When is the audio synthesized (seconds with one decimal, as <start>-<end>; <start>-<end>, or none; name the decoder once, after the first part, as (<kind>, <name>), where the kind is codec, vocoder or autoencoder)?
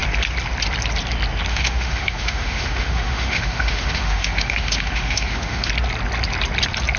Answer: 1.5-5.7 (autoencoder, DAC-VAE)